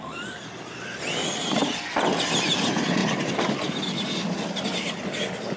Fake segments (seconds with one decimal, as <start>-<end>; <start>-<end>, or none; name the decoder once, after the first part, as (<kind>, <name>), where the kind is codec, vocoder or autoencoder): none